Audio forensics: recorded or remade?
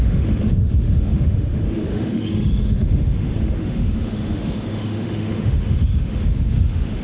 remade